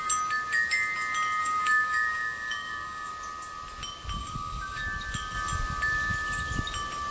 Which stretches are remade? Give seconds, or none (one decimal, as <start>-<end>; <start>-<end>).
1.4-3.1; 4.2-4.8